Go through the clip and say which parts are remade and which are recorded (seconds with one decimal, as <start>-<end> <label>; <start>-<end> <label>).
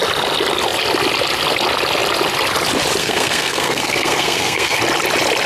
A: 0.0-3.0 recorded; 3.0-4.8 remade; 4.8-5.5 recorded